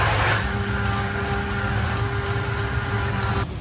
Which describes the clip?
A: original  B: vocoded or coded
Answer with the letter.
A